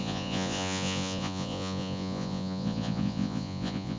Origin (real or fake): fake